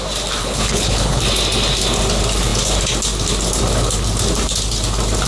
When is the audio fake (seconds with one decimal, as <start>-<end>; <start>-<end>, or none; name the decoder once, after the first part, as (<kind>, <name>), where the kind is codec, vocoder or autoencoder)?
0.4-1.2 (codec, HILCodec)